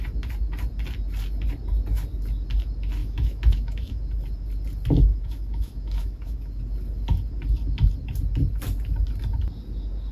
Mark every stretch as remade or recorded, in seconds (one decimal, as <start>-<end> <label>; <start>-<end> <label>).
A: 0.0-3.0 recorded; 3.0-4.0 remade; 4.0-5.1 recorded; 5.1-6.6 remade; 6.6-10.1 recorded

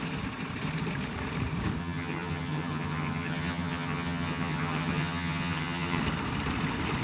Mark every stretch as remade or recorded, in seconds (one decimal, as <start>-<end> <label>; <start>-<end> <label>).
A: 0.0-1.8 recorded; 1.8-6.0 remade; 6.0-7.0 recorded

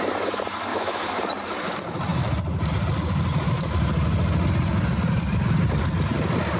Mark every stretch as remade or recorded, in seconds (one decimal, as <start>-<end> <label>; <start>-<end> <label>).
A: 0.0-0.7 recorded; 0.7-1.2 remade; 1.2-6.6 recorded

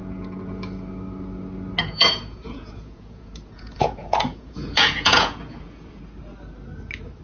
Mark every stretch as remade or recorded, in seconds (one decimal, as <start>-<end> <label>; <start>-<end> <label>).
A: 0.0-0.9 remade; 0.9-1.8 recorded; 1.8-6.0 remade; 6.0-7.2 recorded

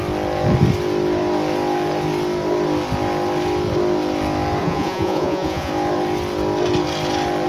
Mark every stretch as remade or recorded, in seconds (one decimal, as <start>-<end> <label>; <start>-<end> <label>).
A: 0.0-4.6 recorded; 4.6-5.7 remade; 5.7-7.5 recorded

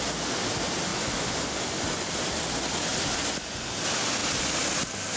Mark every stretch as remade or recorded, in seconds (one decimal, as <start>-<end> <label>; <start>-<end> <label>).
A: 0.0-0.9 recorded; 0.9-2.1 remade; 2.1-2.9 recorded; 2.9-3.7 remade; 3.7-5.2 recorded

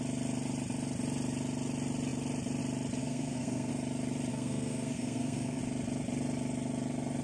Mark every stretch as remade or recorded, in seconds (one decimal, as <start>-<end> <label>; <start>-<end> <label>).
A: 0.0-3.0 recorded; 3.0-3.7 remade; 3.7-4.3 recorded; 4.3-5.6 remade; 5.6-7.2 recorded